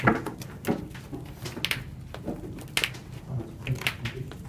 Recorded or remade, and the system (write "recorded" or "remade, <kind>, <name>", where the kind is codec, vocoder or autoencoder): recorded